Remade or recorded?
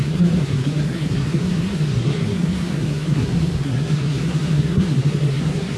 remade